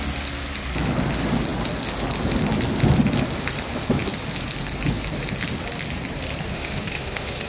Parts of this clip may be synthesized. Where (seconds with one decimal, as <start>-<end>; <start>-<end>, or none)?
6.5-7.5